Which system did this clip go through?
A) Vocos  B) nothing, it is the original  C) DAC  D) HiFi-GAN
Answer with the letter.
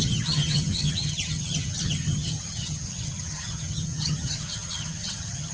D